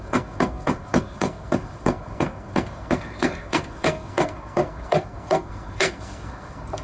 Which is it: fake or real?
fake